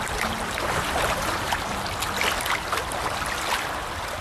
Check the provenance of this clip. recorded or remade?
recorded